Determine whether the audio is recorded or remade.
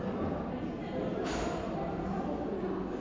recorded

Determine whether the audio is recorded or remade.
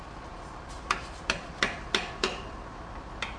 recorded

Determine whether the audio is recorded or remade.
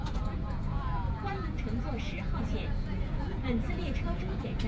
remade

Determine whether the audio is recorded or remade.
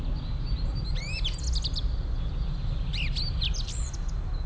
recorded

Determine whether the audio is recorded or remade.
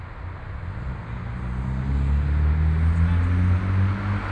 recorded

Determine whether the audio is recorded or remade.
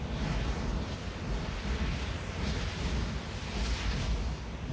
recorded